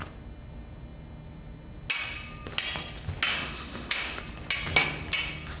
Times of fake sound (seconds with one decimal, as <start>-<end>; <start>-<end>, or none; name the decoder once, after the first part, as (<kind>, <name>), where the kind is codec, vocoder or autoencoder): 3.3-4.2 (autoencoder, DAC-VAE)